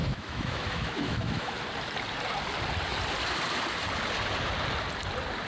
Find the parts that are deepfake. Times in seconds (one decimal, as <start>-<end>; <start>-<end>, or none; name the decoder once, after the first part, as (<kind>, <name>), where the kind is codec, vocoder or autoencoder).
0.0-1.5 (autoencoder, DAC-VAE)